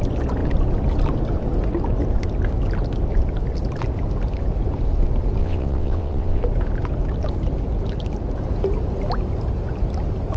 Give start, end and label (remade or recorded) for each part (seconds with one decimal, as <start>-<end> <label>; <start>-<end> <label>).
0.0-5.4 recorded; 5.4-6.4 remade; 6.4-10.4 recorded